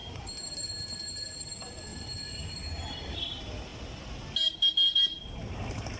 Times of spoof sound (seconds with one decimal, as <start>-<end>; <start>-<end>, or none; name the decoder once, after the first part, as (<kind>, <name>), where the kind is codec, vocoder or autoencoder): 0.0-1.5 (vocoder, BigVGAN v2); 1.9-3.2